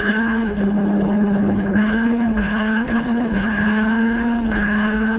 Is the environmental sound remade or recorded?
remade